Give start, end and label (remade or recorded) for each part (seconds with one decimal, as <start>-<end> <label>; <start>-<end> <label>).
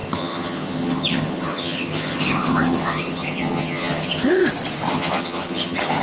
0.0-4.4 remade; 4.4-4.9 recorded; 4.9-6.0 remade